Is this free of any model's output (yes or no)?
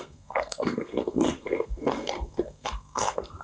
no